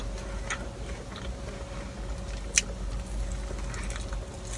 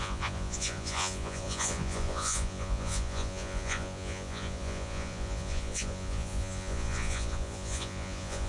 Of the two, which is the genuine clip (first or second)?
first